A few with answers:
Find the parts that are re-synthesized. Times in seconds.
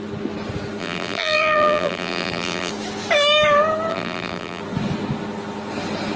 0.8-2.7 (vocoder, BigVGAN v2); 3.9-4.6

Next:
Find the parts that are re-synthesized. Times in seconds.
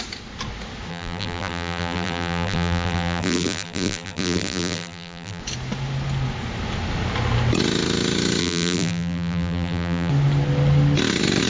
0.9-5.4 (vocoder, BigVGAN v2); 8.4-10.1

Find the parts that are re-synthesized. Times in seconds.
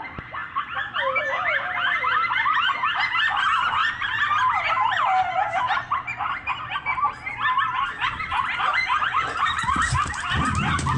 3.8-6.5 (vocoder, BigVGAN v2); 7.3-8.1; 8.7-10.0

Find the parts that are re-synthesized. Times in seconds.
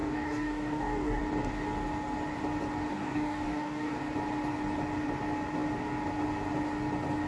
0.0-1.2 (codec, DAC); 2.9-4.0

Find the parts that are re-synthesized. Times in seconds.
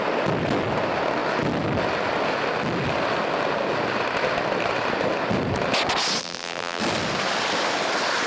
6.2-6.8 (vocoder, BigVGAN v2)